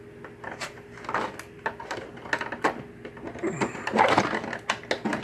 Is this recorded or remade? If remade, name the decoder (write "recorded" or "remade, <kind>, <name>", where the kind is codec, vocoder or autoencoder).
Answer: recorded